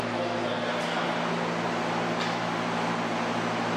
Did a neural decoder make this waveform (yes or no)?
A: no